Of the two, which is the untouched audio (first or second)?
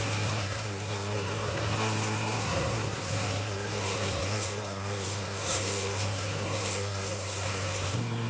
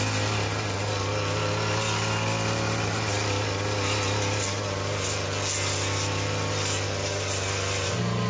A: second